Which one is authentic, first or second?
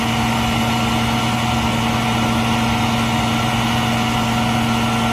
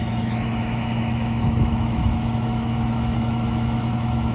first